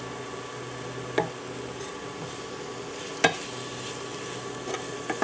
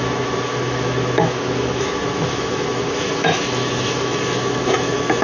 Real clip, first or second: first